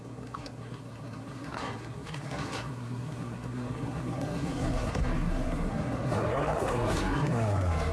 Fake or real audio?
fake